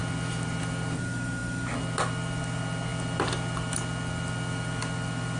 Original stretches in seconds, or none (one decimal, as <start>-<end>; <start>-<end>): 0.0-5.4